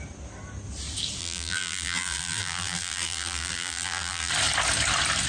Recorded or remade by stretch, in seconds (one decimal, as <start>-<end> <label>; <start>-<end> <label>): 0.0-1.2 recorded; 1.2-4.3 remade; 4.3-5.3 recorded